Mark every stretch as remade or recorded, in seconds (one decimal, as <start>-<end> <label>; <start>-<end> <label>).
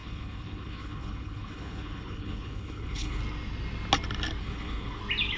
0.0-3.2 remade; 3.2-4.4 recorded; 4.4-5.0 remade; 5.0-5.4 recorded